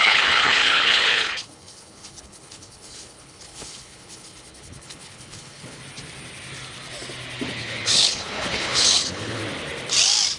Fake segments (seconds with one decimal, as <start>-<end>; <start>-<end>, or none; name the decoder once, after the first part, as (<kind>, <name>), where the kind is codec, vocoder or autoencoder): 0.0-5.8 (codec, HILCodec); 7.5-9.4